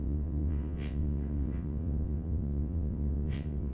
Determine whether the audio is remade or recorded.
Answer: remade